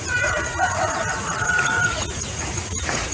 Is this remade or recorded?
remade